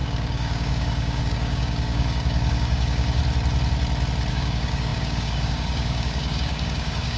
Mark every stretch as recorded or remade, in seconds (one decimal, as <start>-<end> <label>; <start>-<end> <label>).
0.0-3.2 remade; 3.2-4.3 recorded; 4.3-7.2 remade